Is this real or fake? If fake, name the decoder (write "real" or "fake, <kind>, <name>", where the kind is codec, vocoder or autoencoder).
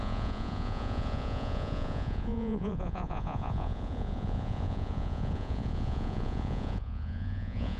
fake, vocoder, Vocos